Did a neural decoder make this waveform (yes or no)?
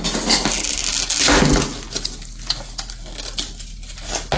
no